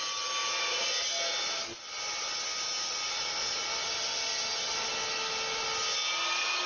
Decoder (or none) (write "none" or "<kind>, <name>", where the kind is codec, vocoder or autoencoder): none